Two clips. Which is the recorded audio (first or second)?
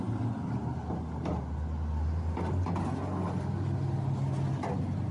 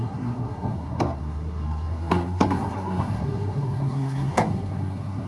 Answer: first